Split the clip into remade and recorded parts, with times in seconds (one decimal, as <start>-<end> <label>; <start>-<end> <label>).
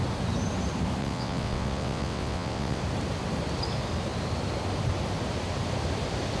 0.0-1.0 recorded; 1.0-2.8 remade; 2.8-6.4 recorded